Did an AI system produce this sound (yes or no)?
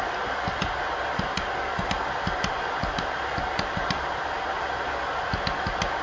no